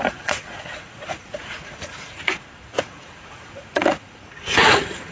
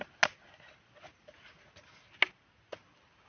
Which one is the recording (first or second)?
second